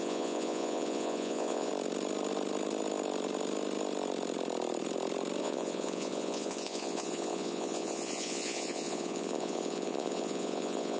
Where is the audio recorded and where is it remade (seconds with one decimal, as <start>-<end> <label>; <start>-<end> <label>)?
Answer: 0.0-1.7 remade; 1.7-5.4 recorded; 5.4-11.0 remade